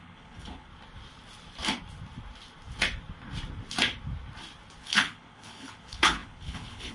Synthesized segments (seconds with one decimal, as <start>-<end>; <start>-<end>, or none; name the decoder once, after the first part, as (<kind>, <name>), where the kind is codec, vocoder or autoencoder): 0.0-0.7 (codec, HILCodec); 4.8-6.9